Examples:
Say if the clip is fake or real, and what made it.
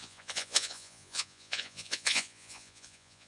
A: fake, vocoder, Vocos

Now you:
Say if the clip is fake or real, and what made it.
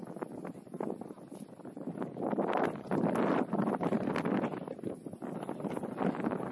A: real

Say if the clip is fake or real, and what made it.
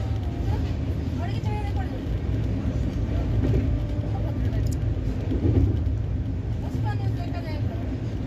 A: real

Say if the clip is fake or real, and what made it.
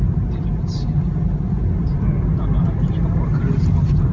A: real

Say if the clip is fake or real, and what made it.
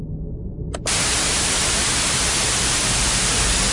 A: real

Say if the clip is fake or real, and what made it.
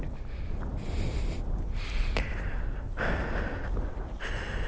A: real